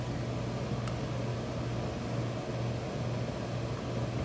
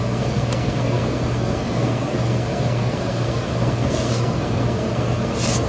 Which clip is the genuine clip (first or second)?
first